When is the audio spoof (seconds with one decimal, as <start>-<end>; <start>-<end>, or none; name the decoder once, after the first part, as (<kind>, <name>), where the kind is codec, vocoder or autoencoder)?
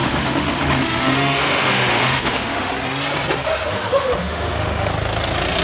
0.0-2.7 (autoencoder, DAC-VAE); 3.5-4.9